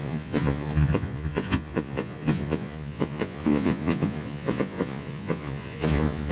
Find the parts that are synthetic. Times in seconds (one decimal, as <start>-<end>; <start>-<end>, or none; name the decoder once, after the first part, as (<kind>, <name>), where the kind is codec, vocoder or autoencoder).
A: 0.0-6.3 (vocoder, Vocos)